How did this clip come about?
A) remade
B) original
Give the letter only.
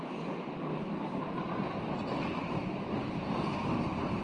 B